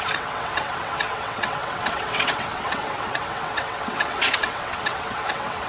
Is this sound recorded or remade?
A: remade